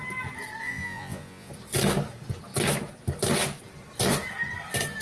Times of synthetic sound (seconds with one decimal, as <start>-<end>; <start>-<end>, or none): 0.6-1.5

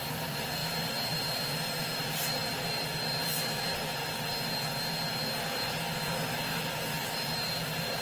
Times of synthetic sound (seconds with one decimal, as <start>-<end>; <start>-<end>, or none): none

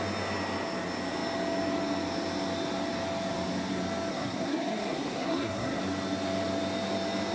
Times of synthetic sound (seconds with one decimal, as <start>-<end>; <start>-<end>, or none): 4.1-5.8

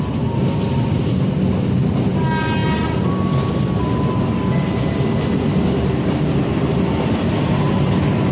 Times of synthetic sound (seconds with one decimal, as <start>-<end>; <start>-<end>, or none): none